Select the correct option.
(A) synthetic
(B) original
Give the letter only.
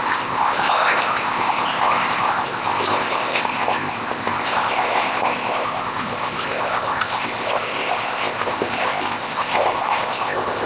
A